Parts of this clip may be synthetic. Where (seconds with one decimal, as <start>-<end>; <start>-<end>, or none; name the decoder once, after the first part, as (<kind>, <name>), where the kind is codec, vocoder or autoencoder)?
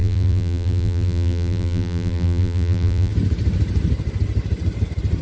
0.0-3.1 (vocoder, BigVGAN v2)